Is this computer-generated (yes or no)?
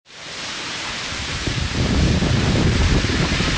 yes